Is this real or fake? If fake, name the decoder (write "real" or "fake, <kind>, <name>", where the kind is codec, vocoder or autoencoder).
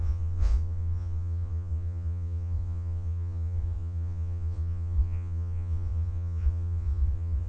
fake, vocoder, Vocos